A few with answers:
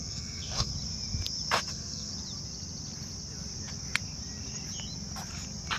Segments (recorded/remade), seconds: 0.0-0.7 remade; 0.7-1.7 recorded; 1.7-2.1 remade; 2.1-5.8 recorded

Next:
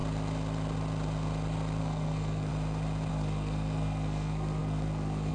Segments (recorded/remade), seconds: 0.0-1.8 recorded; 1.8-2.5 remade; 2.5-3.1 recorded; 3.1-5.3 remade